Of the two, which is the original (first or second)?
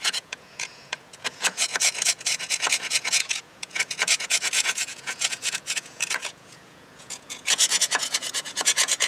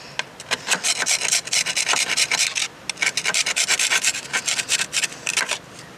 second